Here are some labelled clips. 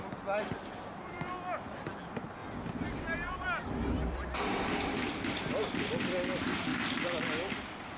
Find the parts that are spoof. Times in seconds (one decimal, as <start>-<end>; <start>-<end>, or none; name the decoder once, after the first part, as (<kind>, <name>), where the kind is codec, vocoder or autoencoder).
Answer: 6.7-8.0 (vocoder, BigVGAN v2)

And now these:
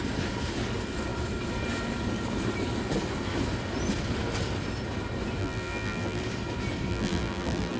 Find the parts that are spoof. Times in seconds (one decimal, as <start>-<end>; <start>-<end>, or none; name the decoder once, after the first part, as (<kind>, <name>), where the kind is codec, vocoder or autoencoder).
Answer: 5.4-6.2 (vocoder, BigVGAN v2); 6.9-7.8

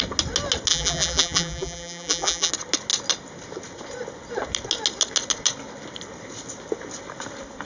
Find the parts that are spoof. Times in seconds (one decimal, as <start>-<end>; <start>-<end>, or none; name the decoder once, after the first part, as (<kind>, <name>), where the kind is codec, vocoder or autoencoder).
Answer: 0.7-2.5 (vocoder, BigVGAN v2)

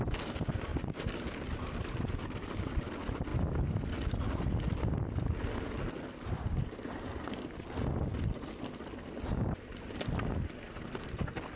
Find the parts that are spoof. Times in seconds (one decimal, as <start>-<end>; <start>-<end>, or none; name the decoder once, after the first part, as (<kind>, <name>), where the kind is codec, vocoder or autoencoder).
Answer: 0.7-2.6 (vocoder, BigVGAN v2)

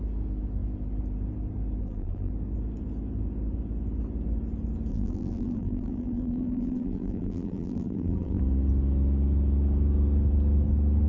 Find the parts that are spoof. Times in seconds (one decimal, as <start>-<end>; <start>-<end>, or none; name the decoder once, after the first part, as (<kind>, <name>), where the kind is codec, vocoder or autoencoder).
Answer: 1.8-2.3 (vocoder, BigVGAN v2); 4.9-8.4

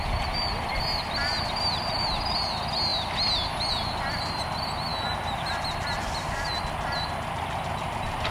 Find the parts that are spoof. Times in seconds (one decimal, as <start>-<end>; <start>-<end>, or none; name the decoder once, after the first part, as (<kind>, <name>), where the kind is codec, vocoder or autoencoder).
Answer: none

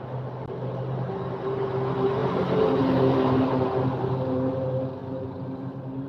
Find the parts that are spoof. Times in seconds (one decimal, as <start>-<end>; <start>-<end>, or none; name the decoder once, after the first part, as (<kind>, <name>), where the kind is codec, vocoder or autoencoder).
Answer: 2.2-2.8 (vocoder, BigVGAN v2)